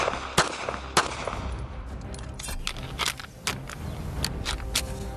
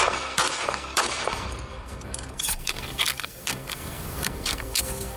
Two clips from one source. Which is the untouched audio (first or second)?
first